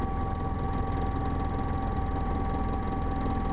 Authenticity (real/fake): real